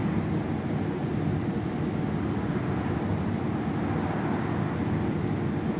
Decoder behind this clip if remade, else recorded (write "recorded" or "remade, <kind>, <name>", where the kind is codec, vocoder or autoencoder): recorded